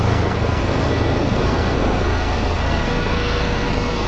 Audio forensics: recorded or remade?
remade